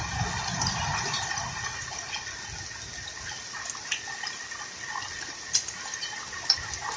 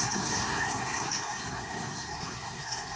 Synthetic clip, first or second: second